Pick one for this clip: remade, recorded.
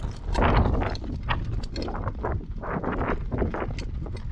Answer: recorded